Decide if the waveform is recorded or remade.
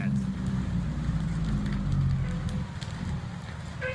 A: recorded